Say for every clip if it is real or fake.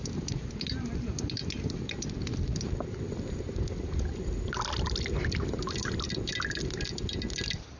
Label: real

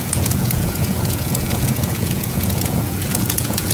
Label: fake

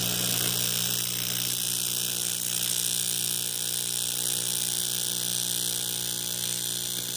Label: real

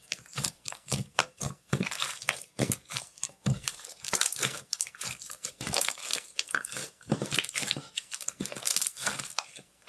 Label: fake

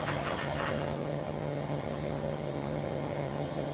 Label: fake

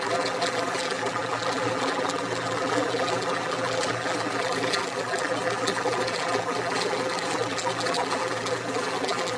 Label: fake